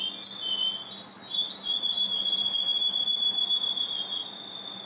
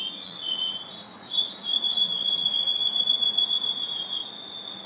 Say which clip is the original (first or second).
first